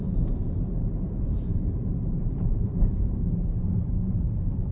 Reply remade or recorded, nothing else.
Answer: remade